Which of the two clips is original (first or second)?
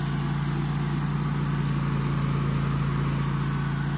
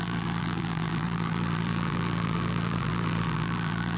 first